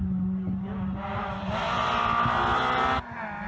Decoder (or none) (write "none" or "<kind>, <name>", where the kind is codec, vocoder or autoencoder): none